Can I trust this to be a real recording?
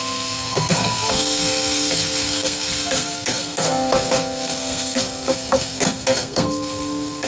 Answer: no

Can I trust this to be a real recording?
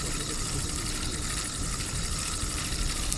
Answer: yes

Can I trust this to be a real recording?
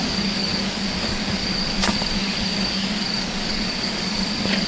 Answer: no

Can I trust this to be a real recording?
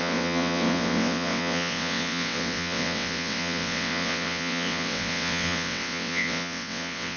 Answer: no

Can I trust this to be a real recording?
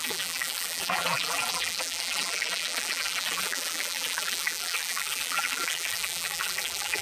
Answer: no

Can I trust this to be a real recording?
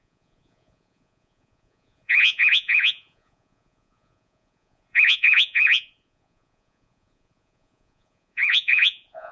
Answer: no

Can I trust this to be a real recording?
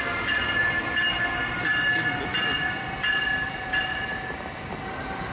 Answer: yes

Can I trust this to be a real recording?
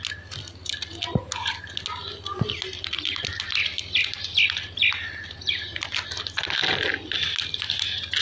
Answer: yes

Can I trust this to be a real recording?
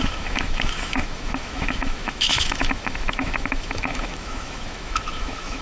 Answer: no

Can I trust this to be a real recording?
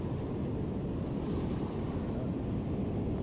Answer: yes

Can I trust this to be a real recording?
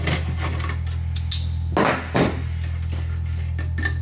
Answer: yes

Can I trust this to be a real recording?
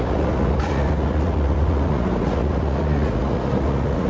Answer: no